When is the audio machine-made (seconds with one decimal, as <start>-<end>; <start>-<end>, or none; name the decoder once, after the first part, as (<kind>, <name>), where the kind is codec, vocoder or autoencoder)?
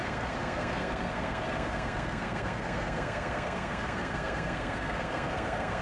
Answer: 0.0-5.8 (codec, SNAC)